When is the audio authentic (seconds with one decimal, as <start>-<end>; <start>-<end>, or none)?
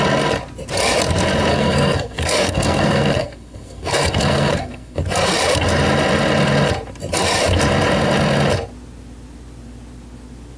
0.0-1.5; 5.0-10.6